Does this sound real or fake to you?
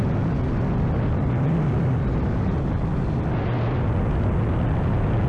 real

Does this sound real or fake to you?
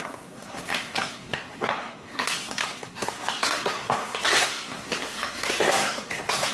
fake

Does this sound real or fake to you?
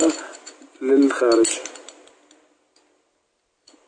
real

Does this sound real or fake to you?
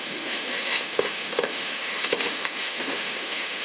fake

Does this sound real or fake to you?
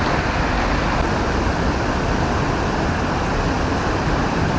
real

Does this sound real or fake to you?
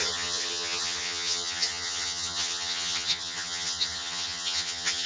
fake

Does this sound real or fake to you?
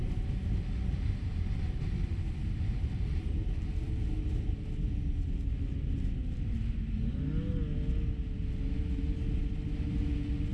real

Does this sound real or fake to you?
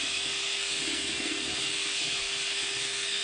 fake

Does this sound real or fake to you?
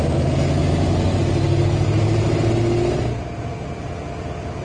real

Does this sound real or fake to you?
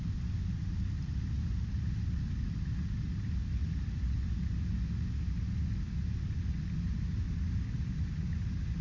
real